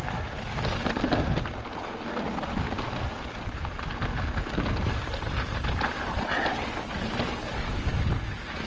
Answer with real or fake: real